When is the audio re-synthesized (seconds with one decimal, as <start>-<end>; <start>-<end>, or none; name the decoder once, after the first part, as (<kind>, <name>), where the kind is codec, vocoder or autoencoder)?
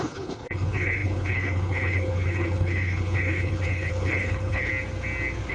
0.0-4.7 (codec, HILCodec)